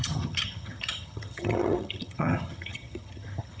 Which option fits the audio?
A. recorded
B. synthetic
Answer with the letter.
B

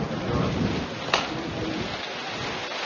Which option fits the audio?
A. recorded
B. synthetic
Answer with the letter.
A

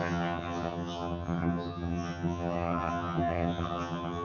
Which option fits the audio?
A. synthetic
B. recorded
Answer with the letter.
A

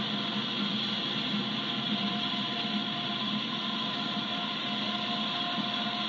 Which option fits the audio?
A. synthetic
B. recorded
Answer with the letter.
B